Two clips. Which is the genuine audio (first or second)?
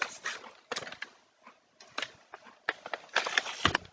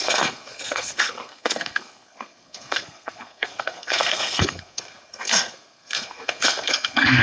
first